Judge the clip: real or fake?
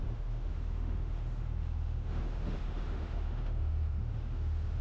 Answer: fake